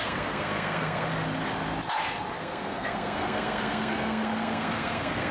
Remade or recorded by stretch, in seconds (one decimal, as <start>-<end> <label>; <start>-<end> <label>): 0.0-1.1 remade; 1.1-2.4 recorded; 2.4-5.3 remade